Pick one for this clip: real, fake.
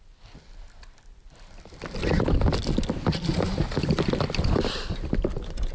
real